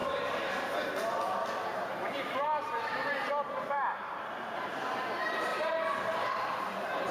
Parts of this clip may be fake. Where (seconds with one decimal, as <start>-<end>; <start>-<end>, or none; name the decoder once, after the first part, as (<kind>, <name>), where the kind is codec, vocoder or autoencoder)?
1.7-7.1 (vocoder, BigVGAN v2)